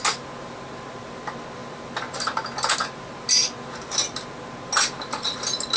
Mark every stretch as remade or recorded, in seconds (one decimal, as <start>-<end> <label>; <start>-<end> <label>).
0.0-5.8 recorded